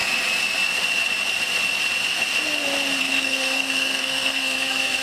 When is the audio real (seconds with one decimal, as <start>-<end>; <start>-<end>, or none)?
0.0-3.0